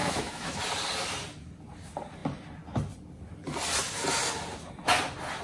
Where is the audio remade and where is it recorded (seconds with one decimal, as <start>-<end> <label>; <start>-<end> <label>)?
0.0-0.6 remade; 0.6-5.4 recorded